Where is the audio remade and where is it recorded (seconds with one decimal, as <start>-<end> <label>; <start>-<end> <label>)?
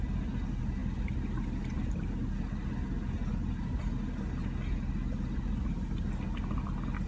0.0-7.1 recorded